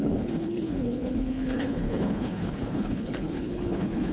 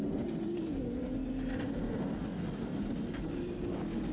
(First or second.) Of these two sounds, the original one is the second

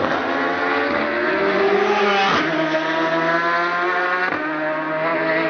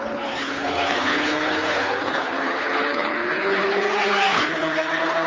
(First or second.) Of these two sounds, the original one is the first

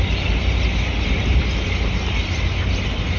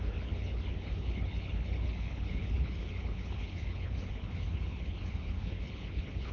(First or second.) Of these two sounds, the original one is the first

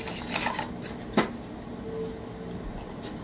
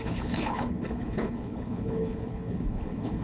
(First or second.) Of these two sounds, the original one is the first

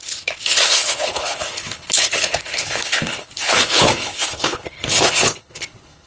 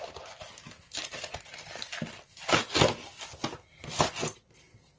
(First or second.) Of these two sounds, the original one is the second